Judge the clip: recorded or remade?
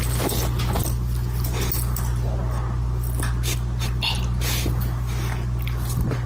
recorded